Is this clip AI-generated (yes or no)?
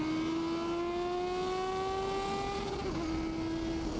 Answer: no